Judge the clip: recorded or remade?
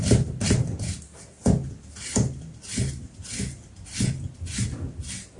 recorded